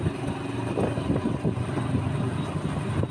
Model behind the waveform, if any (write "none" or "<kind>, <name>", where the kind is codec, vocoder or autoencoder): none